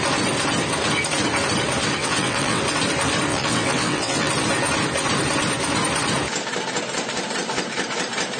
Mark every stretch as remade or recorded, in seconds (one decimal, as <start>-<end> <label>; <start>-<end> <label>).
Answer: 0.0-2.0 recorded; 2.0-2.6 remade; 2.6-3.3 recorded; 3.3-4.3 remade; 4.3-8.4 recorded